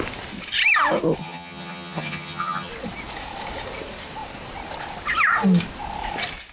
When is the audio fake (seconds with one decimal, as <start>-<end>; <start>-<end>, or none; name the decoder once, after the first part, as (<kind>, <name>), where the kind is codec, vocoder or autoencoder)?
1.2-2.7 (vocoder, HiFi-GAN)